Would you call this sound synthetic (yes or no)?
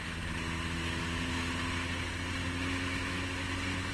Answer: no